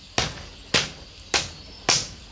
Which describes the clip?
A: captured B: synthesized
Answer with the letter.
A